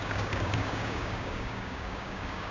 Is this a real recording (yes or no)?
no